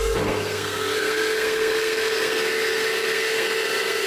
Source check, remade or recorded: remade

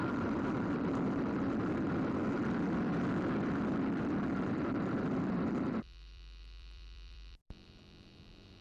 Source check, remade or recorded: remade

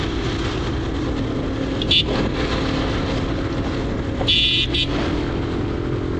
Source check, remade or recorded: recorded